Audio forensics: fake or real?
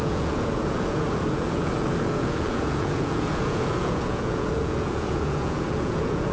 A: fake